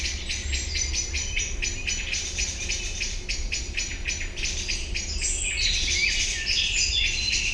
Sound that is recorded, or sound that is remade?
recorded